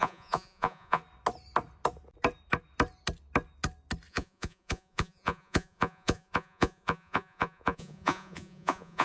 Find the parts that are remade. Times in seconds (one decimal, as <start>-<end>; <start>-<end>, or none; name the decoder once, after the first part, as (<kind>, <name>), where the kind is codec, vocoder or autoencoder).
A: 0.0-1.0 (vocoder, Vocos); 4.1-9.0